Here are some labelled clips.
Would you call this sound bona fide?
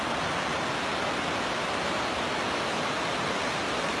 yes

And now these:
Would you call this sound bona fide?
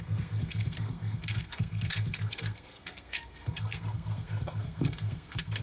no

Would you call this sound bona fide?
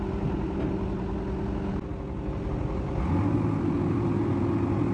yes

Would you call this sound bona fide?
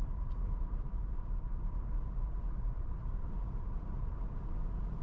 no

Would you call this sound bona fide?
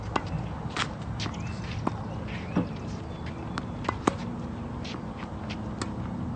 yes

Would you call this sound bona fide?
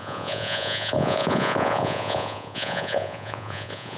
no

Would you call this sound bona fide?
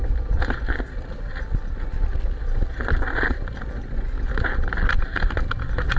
yes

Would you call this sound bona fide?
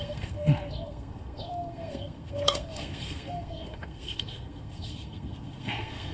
no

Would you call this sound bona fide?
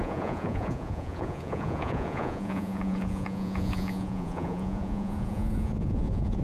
no